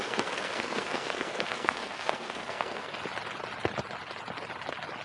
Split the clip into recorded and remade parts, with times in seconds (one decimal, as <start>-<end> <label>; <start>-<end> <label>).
0.0-3.0 remade; 3.0-5.0 recorded